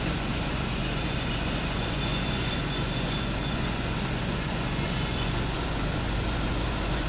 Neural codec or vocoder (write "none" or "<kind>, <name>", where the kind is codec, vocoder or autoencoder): vocoder, Vocos